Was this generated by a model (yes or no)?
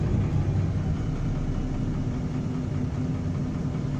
no